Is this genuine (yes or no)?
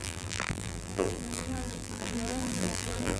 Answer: no